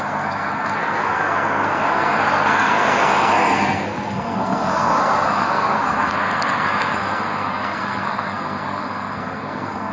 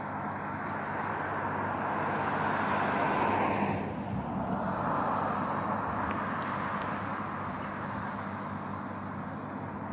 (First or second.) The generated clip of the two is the first